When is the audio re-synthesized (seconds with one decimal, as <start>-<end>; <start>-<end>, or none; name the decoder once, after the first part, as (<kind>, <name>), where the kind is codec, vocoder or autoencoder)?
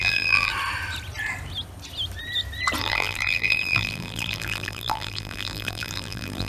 0.0-0.5 (vocoder, BigVGAN v2); 2.8-6.5